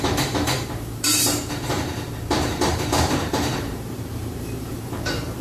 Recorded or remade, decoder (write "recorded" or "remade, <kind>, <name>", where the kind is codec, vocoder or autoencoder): remade, vocoder, BigVGAN v2